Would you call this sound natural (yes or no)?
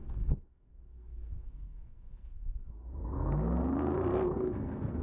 no